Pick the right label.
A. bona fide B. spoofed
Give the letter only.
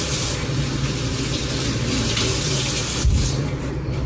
B